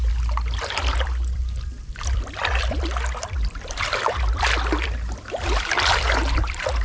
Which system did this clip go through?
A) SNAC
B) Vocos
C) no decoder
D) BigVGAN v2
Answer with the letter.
D